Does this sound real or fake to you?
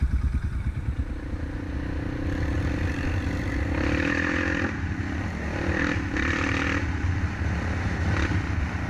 real